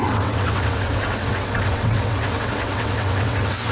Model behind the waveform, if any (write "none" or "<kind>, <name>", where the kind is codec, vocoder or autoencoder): vocoder, WaveNeXt